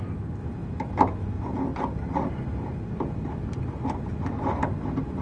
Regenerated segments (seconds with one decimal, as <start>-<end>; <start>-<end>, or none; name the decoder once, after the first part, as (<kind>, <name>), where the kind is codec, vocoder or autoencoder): 0.0-1.7 (vocoder, BigVGAN v2); 2.3-5.2